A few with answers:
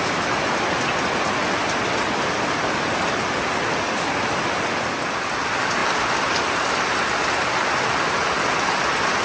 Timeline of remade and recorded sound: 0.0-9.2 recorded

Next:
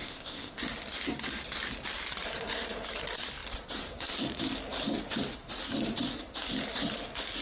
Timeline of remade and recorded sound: 0.0-0.6 remade; 0.6-7.4 recorded

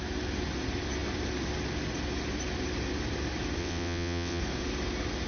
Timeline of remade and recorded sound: 0.0-3.6 recorded; 3.6-4.4 remade; 4.4-5.3 recorded

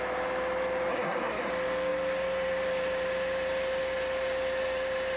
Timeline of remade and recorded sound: 0.0-0.9 recorded; 0.9-1.5 remade; 1.5-5.2 recorded